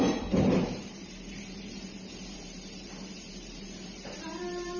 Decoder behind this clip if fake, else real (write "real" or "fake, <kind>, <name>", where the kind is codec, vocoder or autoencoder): fake, vocoder, BigVGAN v2